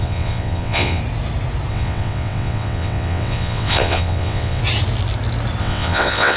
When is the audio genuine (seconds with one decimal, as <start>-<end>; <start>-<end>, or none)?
1.0-1.7; 4.6-5.6